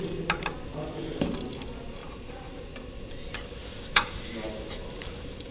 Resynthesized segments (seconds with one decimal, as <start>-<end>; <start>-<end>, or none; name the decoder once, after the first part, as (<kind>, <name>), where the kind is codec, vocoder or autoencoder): 2.0-3.1 (vocoder, BigVGAN v2); 3.6-5.5